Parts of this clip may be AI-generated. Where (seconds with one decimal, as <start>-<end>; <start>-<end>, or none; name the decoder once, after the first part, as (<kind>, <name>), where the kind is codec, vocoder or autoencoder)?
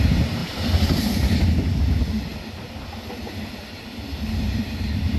0.0-2.3 (vocoder, BigVGAN v2); 3.5-5.2